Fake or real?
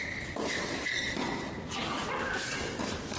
real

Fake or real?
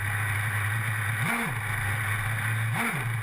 real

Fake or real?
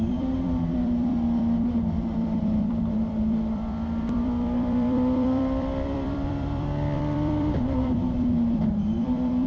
fake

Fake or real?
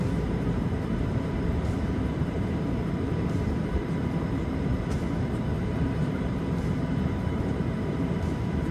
fake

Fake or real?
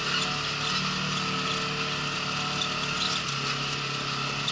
real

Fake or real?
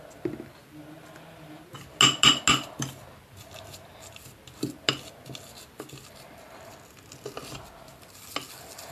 real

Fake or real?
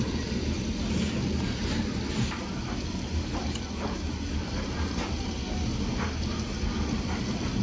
real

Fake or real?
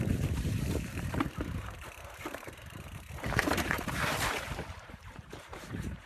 fake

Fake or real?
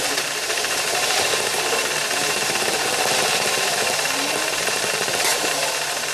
fake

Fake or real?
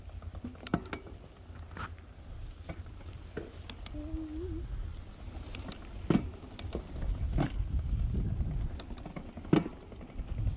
real